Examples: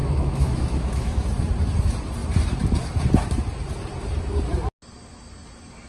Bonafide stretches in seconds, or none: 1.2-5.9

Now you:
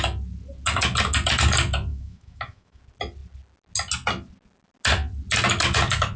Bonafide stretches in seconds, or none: 0.0-1.9; 2.8-6.2

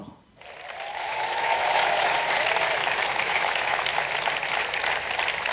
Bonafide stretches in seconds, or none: 0.0-0.9; 2.2-2.8; 3.8-5.5

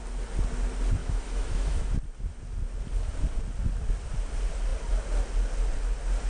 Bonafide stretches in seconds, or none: 0.0-1.0; 1.9-6.3

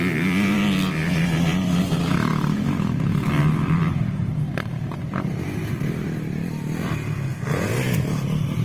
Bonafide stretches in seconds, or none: 0.0-2.3; 3.3-8.6

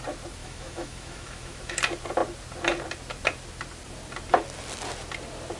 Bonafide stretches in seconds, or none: 0.0-0.4; 1.8-5.6

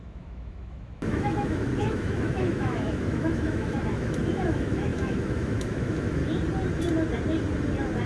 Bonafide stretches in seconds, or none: 6.2-8.1